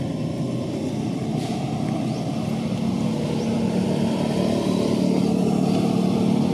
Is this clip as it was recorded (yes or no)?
yes